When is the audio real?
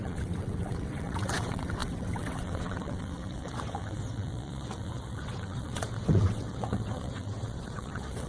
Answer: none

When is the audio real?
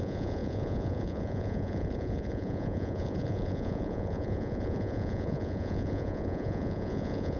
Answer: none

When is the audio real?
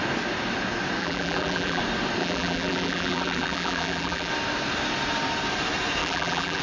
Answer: 0.0-1.0; 1.8-2.2; 4.3-6.0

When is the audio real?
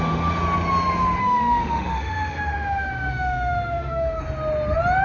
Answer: 0.0-1.2; 4.2-5.0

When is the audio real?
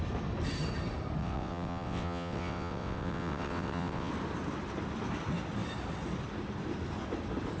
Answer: 0.0-1.2; 4.1-7.6